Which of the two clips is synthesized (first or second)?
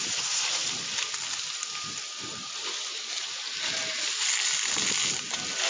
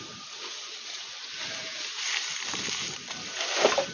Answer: second